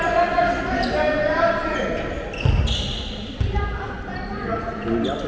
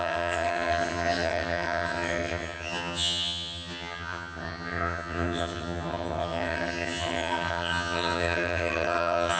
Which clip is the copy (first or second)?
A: second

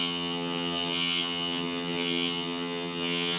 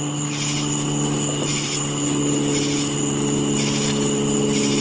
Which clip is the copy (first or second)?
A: first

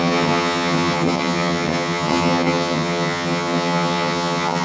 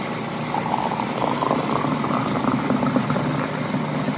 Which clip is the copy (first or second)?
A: first